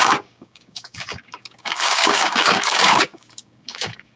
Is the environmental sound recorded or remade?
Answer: remade